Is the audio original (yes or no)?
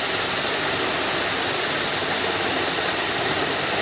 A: yes